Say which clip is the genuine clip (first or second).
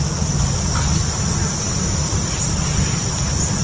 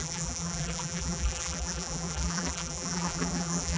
first